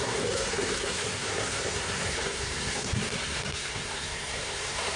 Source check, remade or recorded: remade